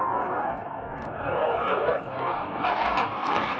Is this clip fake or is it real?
fake